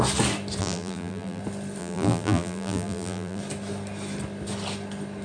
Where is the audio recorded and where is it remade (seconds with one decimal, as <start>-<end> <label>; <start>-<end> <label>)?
0.0-0.6 recorded; 0.6-1.4 remade; 1.4-1.8 recorded; 1.8-3.4 remade; 3.4-5.2 recorded